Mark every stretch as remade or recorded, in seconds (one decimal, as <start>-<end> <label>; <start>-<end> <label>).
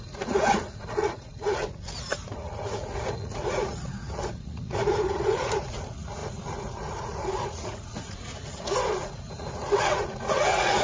0.0-10.8 remade